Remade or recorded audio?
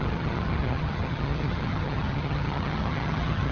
remade